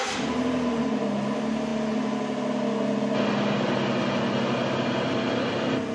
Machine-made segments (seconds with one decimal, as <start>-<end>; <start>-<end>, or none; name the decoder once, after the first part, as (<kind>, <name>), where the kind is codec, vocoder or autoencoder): none